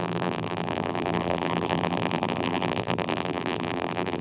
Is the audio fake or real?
fake